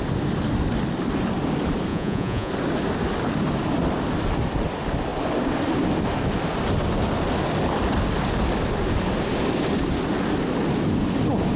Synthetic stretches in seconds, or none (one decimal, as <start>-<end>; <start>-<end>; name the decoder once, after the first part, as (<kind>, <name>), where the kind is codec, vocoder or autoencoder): 1.9-2.5 (vocoder, Vocos)

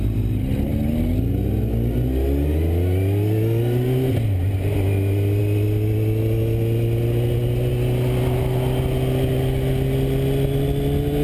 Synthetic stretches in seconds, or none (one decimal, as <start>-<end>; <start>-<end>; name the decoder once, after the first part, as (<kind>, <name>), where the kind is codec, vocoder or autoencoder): none

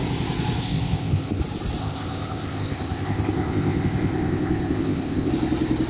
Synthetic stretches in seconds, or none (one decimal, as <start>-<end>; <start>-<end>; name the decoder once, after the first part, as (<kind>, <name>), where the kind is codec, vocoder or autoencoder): 0.6-1.4 (codec, ZipCodec); 1.8-5.3

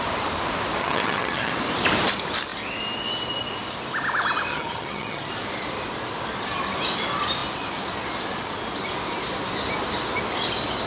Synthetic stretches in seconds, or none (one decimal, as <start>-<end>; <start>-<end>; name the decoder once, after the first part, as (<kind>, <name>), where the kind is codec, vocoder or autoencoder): 0.8-1.5 (vocoder, HiFi-GAN); 4.5-5.3

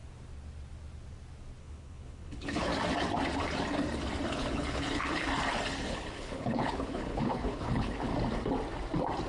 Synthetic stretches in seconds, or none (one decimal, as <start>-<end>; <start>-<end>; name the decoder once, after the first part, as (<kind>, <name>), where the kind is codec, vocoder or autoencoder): 1.6-2.7 (codec, HILCodec); 4.3-5.3; 5.9-8.1